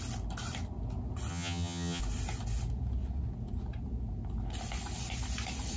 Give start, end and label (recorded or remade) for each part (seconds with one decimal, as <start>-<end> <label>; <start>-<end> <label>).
0.0-1.3 recorded; 1.3-2.0 remade; 2.0-5.8 recorded